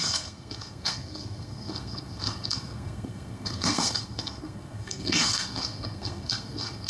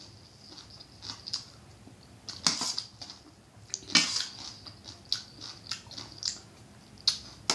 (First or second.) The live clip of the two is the second